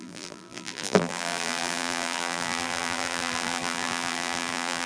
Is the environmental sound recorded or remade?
remade